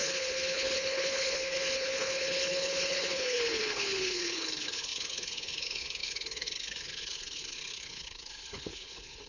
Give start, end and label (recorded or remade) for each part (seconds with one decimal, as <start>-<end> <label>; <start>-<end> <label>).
0.0-9.3 remade